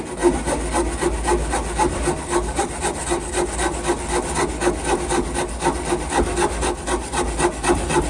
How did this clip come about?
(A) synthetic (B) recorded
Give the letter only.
B